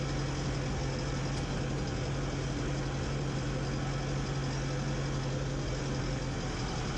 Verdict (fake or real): real